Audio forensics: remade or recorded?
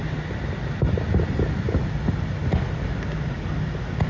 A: recorded